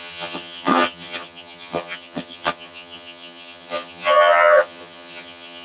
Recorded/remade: remade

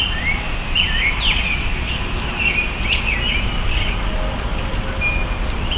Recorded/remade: recorded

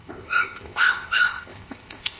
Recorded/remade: remade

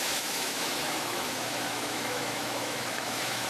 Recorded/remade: remade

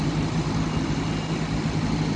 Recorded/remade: recorded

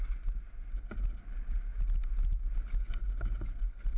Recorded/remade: recorded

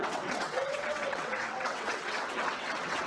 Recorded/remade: remade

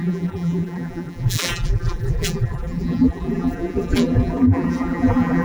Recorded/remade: remade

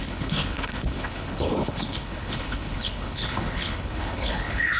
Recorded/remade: remade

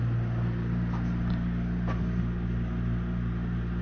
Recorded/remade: recorded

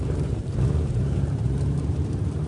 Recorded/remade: remade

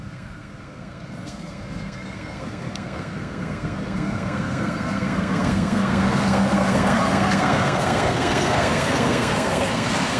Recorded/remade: remade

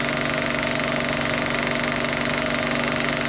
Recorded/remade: recorded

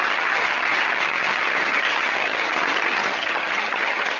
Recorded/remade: remade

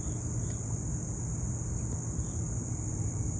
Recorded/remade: recorded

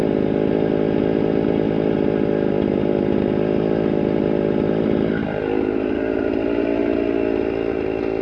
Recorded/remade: recorded